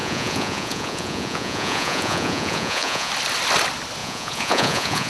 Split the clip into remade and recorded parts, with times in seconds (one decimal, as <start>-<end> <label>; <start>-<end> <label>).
0.0-3.1 remade; 3.1-4.0 recorded; 4.0-5.1 remade

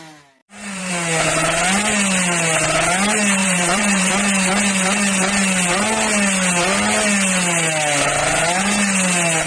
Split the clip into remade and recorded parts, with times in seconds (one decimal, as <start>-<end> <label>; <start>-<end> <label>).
0.0-0.4 recorded; 0.4-0.9 remade; 0.9-3.4 recorded; 3.4-4.1 remade; 4.1-9.5 recorded